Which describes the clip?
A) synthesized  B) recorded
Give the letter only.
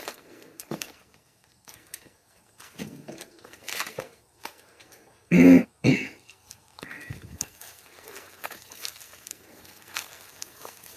A